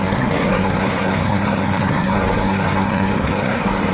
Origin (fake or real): fake